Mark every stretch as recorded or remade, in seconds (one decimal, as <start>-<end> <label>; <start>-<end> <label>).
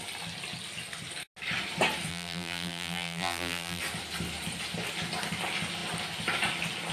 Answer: 0.0-2.1 recorded; 2.1-3.8 remade; 3.8-6.9 recorded